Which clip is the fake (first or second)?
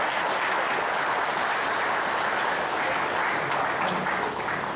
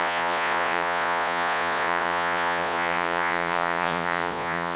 second